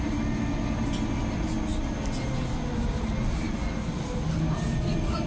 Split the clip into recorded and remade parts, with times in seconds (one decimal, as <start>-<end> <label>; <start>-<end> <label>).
0.0-5.3 recorded